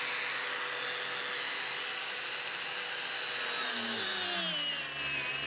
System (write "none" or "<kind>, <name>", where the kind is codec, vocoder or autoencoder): none